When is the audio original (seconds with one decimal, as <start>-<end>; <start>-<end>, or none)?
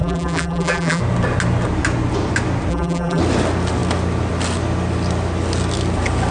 1.0-2.7; 3.2-6.3